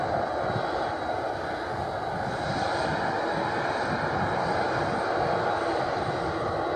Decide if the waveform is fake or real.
real